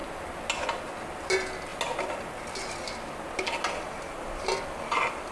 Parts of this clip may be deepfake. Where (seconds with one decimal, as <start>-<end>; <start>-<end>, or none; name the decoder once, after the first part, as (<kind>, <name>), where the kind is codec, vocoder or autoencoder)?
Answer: none